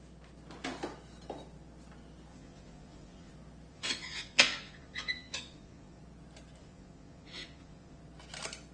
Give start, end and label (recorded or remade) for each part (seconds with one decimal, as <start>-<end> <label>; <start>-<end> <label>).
0.0-2.3 recorded; 2.3-3.3 remade; 3.3-3.7 recorded; 3.7-6.0 remade; 6.0-6.6 recorded; 6.6-8.0 remade; 8.0-8.7 recorded